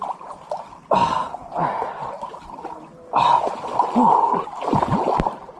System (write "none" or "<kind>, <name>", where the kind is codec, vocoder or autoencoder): none